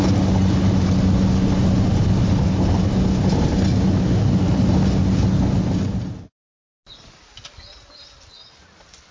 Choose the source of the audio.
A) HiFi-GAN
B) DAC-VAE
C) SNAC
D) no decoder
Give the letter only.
D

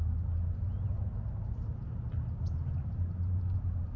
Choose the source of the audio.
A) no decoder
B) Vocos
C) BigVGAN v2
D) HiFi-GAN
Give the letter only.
A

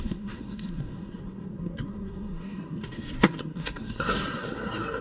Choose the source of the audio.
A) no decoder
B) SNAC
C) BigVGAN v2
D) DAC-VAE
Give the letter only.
B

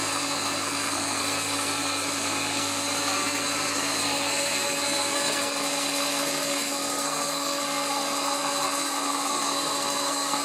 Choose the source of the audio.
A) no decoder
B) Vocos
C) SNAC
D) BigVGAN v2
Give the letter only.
C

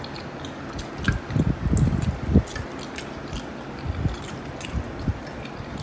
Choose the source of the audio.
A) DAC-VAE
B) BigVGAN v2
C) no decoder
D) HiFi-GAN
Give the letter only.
C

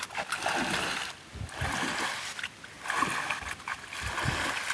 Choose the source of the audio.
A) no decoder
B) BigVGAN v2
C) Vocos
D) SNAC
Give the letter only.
A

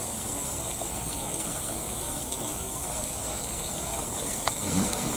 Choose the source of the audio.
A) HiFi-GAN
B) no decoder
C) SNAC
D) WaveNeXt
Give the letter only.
C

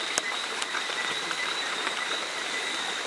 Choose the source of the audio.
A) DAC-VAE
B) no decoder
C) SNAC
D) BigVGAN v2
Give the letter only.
D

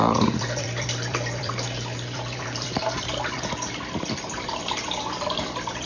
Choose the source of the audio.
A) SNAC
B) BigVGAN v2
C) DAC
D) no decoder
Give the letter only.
B